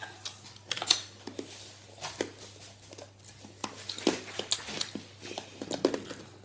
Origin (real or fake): real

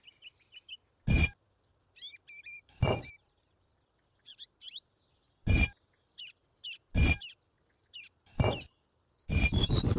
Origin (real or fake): real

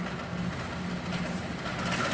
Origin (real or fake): real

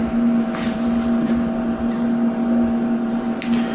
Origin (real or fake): real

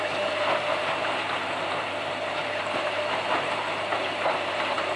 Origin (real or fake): fake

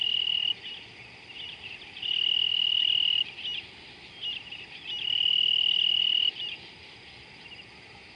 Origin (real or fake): fake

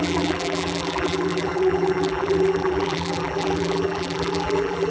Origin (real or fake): fake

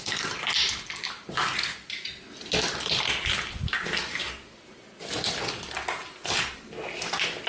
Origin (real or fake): real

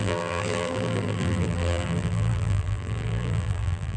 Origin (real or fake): fake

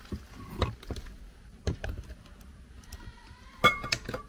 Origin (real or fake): real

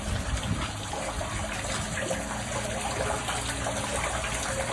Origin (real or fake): real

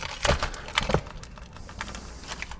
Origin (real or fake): real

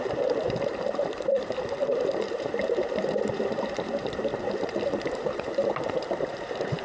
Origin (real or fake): fake